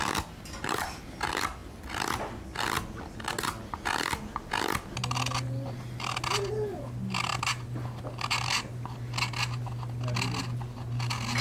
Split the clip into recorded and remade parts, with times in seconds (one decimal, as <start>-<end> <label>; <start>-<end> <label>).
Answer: 0.0-11.4 recorded